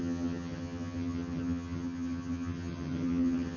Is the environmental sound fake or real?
fake